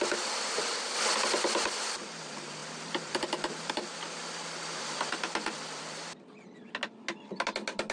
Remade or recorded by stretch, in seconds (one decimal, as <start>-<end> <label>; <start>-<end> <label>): 0.0-7.9 recorded